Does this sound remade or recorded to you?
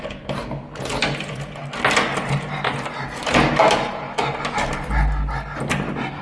recorded